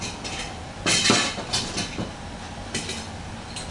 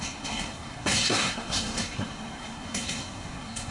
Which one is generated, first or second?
second